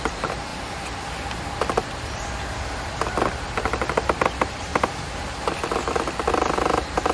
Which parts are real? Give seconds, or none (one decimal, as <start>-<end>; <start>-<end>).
0.5-1.6; 4.7-6.3